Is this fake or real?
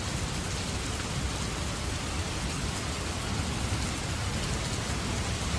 real